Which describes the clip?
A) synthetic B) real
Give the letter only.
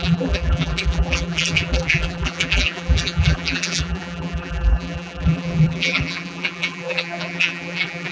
A